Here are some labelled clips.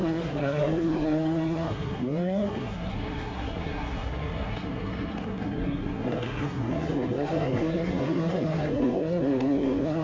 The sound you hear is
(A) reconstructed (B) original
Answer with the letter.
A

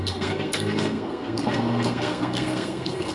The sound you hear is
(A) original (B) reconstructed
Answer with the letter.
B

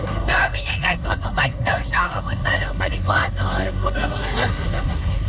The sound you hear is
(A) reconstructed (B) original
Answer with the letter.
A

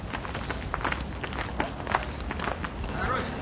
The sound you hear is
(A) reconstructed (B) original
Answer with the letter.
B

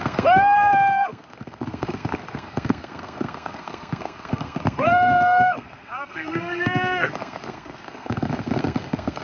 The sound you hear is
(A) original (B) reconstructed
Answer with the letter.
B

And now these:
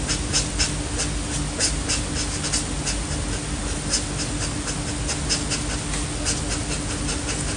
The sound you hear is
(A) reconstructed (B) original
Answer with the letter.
B